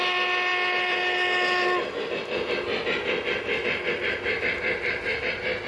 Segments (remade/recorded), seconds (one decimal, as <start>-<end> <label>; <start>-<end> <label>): 0.0-5.7 recorded